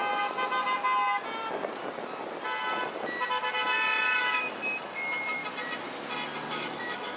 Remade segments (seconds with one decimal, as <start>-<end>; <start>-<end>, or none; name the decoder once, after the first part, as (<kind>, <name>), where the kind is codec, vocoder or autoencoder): 4.2-5.4 (autoencoder, DAC-VAE); 6.5-7.2